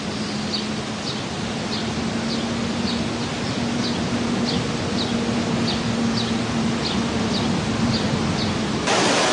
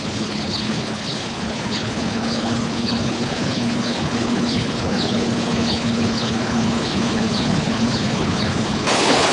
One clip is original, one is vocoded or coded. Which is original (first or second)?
first